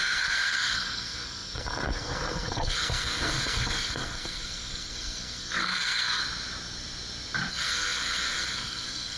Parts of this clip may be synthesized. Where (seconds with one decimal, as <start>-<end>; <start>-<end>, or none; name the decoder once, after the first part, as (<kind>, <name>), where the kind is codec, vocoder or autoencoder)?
0.0-6.2 (codec, SNAC); 7.5-9.2